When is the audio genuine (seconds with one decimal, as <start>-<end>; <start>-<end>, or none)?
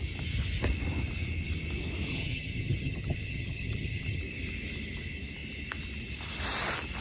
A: 0.0-2.1; 4.2-7.0